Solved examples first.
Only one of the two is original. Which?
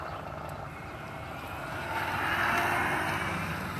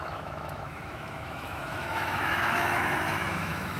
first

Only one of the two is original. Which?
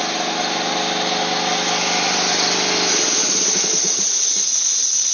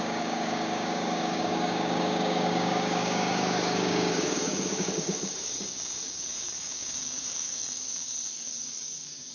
first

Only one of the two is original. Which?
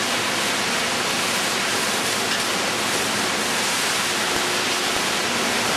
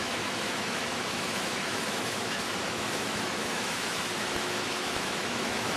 first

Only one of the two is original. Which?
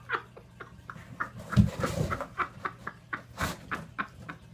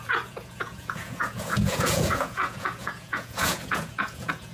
first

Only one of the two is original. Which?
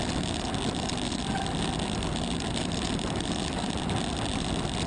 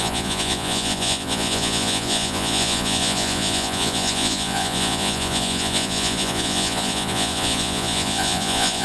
first